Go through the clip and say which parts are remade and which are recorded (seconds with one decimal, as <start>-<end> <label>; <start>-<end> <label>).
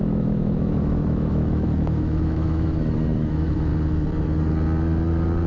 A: 0.0-3.7 remade; 3.7-5.5 recorded